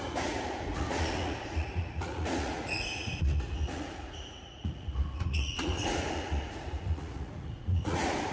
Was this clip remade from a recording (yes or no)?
yes